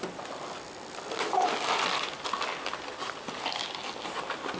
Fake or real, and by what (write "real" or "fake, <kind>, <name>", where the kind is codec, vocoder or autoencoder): real